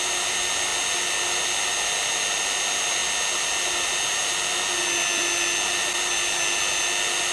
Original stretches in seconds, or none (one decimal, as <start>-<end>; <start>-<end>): 0.0-7.3